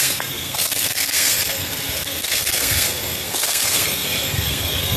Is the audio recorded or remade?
remade